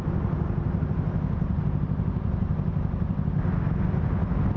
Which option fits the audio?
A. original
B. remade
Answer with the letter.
A